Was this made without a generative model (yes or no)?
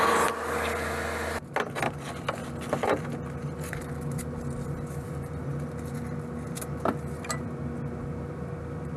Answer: yes